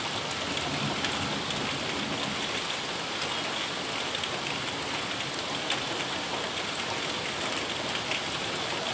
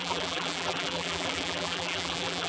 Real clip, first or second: first